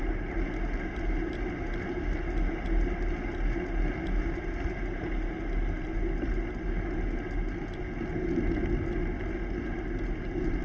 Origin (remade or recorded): recorded